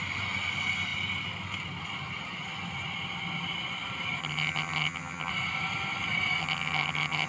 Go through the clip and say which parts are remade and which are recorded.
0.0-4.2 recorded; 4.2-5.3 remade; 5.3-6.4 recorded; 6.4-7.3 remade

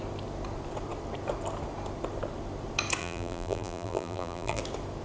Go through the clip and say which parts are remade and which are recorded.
0.0-3.0 recorded; 3.0-4.6 remade; 4.6-5.0 recorded

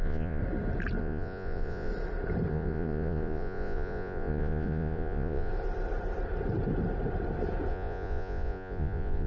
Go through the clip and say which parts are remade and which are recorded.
0.0-0.4 remade; 0.4-1.0 recorded; 1.0-1.9 remade; 1.9-2.5 recorded; 2.5-5.5 remade; 5.5-7.7 recorded; 7.7-9.3 remade

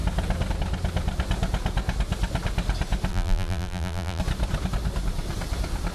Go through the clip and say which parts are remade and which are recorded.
0.0-3.1 recorded; 3.1-4.2 remade; 4.2-5.9 recorded